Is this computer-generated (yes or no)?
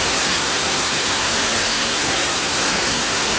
yes